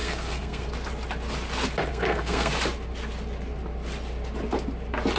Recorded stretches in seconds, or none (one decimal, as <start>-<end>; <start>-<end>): 0.7-1.9; 2.5-5.2